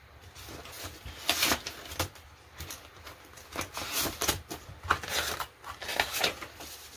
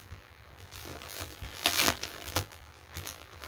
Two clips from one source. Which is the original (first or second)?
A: first